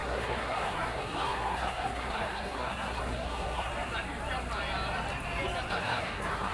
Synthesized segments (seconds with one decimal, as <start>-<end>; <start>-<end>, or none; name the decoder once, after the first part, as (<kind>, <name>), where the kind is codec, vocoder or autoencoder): 0.0-3.7 (codec, SNAC); 5.7-6.5